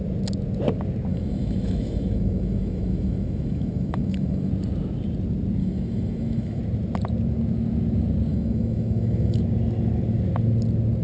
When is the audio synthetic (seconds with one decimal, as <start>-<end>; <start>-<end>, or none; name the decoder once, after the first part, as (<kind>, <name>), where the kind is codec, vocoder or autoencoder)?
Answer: 1.1-4.5 (autoencoder, DAC-VAE); 5.6-6.6; 8.3-9.4

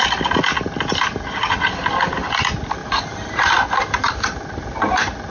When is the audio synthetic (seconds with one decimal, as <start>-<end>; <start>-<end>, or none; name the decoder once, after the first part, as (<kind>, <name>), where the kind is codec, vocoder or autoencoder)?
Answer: 2.8-4.1 (vocoder, BigVGAN v2)

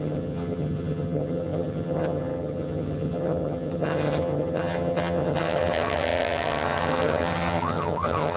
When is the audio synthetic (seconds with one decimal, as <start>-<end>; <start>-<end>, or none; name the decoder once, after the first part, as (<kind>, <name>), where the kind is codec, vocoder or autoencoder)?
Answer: 0.0-8.4 (vocoder, HiFi-GAN)

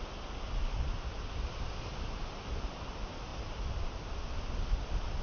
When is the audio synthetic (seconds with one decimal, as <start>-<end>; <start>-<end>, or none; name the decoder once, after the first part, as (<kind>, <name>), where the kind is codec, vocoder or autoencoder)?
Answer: none

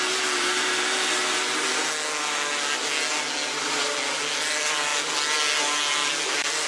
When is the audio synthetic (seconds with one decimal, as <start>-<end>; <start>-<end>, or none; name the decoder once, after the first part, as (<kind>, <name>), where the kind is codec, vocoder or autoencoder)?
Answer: none

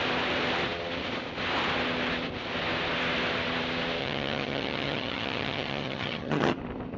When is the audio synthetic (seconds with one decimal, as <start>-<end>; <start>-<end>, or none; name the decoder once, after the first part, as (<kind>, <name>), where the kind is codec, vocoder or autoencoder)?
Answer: 4.0-6.6 (vocoder, HiFi-GAN)